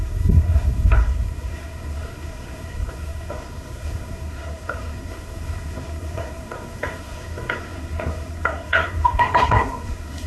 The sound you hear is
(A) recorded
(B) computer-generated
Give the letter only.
B